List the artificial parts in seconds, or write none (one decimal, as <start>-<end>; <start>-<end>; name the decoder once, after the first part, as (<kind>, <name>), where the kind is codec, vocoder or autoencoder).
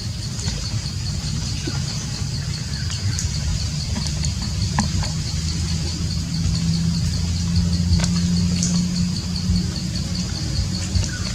0.0-1.7 (vocoder, BigVGAN v2)